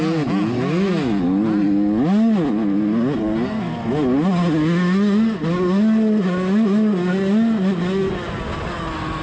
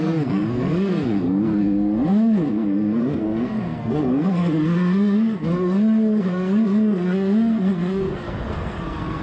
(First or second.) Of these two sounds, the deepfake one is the second